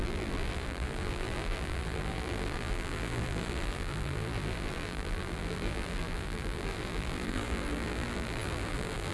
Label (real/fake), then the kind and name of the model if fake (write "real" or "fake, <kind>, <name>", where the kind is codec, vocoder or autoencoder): fake, vocoder, BigVGAN v2